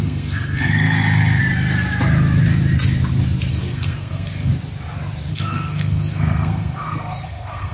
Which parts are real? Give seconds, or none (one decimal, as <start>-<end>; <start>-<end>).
1.4-3.5; 4.5-5.3